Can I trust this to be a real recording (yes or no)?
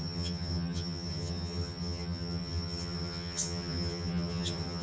no